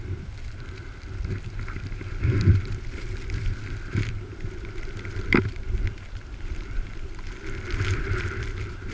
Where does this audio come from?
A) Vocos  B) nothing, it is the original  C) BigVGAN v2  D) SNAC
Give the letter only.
C